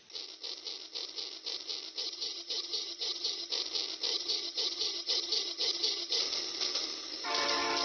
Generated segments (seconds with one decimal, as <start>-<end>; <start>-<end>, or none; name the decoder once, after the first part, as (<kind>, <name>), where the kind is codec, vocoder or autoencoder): 2.0-3.5 (vocoder, HiFi-GAN); 4.1-6.2